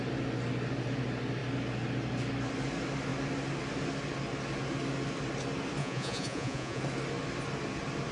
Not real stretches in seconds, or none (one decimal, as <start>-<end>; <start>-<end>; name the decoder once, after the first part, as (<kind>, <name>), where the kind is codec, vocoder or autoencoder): 5.8-6.8 (vocoder, Vocos)